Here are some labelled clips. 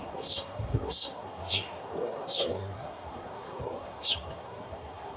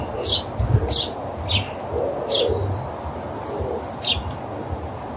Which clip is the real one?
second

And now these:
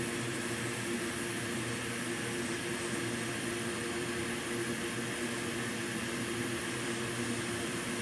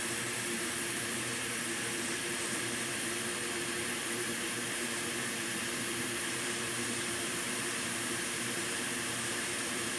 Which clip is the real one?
first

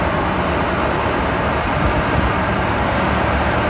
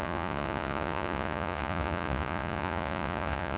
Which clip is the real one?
first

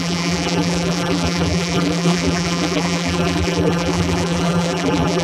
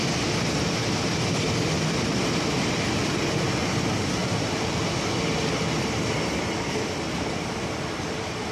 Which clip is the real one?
second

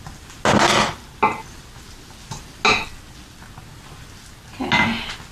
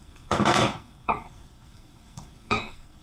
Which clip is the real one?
first